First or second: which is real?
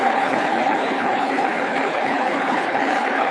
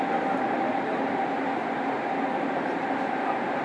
second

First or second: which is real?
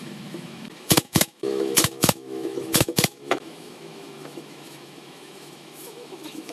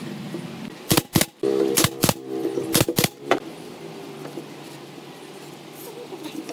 second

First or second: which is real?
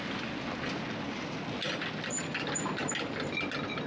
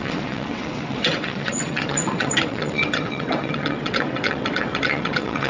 first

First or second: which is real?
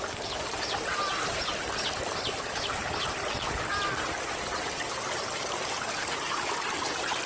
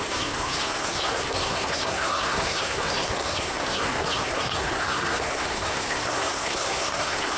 first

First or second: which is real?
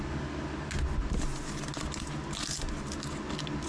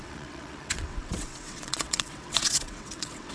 first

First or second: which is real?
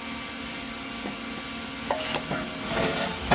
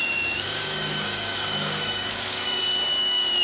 first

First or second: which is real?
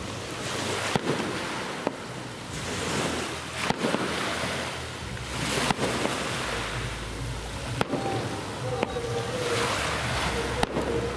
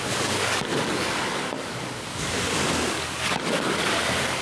first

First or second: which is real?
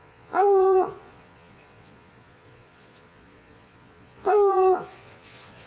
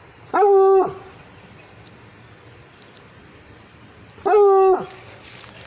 second